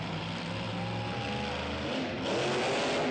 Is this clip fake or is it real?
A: real